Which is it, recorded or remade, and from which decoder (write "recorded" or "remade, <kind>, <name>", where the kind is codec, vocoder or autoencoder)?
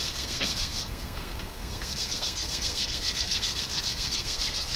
remade, codec, SNAC